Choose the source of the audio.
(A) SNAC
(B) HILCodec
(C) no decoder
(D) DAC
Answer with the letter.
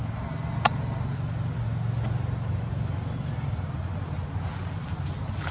C